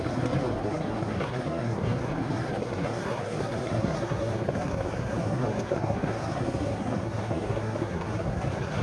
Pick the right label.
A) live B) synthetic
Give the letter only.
B